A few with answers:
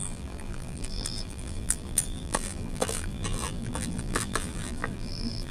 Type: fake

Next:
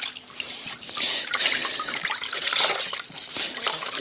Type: fake